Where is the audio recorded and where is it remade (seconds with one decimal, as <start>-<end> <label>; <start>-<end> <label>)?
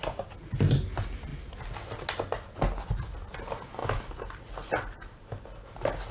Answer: 0.0-3.8 recorded; 3.8-5.6 remade; 5.6-6.1 recorded